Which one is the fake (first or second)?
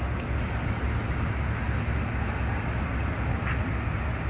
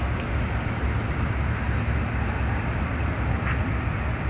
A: second